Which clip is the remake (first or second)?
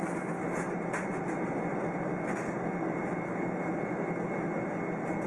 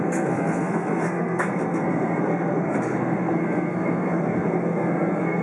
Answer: second